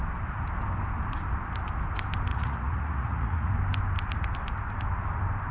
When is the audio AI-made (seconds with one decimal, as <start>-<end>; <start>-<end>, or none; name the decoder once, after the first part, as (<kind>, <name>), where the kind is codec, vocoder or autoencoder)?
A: 2.3-3.5 (vocoder, Vocos)